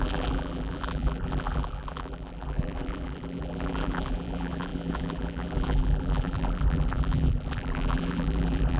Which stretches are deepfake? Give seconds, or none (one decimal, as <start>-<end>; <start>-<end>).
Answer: 0.0-8.8